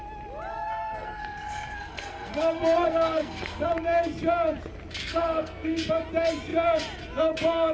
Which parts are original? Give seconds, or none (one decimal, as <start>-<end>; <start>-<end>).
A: 0.0-0.5; 3.7-5.0; 5.9-7.7